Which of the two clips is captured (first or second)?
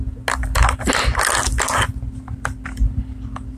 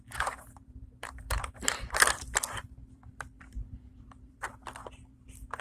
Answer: first